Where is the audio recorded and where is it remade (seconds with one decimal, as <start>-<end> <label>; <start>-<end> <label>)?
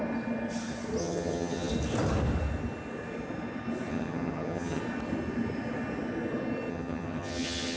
0.0-1.0 recorded; 1.0-1.7 remade; 1.7-3.9 recorded; 3.9-4.8 remade; 4.8-6.7 recorded; 6.7-7.8 remade